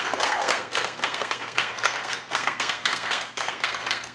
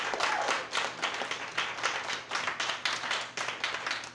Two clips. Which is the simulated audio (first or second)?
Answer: first